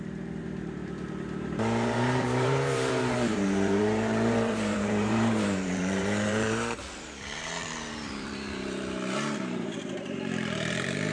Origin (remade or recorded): remade